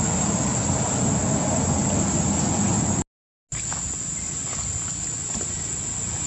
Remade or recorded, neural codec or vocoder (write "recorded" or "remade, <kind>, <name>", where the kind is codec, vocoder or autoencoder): recorded